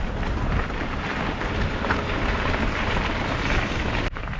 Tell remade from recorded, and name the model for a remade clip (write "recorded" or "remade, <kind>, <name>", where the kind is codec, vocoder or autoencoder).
recorded